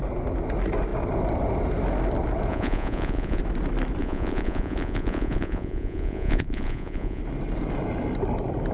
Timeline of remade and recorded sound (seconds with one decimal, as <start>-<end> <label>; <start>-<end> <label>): 0.0-2.5 recorded; 2.5-3.4 remade; 3.4-4.0 recorded; 4.0-7.2 remade; 7.2-8.7 recorded